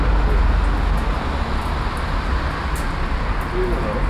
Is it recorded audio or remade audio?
recorded